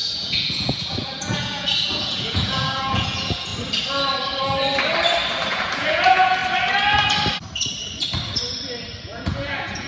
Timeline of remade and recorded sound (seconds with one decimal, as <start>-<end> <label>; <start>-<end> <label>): 0.0-3.5 remade; 3.5-5.5 recorded; 5.5-6.4 remade; 6.4-9.0 recorded; 9.0-9.9 remade